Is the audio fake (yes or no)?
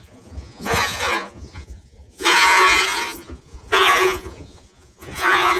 yes